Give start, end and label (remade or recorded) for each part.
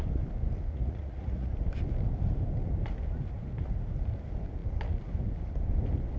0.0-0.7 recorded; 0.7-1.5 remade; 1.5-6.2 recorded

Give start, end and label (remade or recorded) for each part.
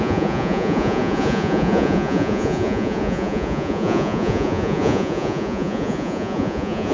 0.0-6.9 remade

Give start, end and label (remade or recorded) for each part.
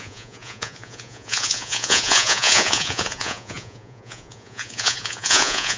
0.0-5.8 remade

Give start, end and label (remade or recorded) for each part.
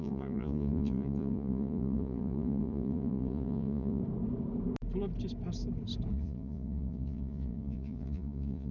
0.0-4.0 remade; 4.0-6.1 recorded; 6.1-8.7 remade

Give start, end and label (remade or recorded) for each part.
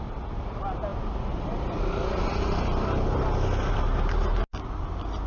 0.0-5.3 recorded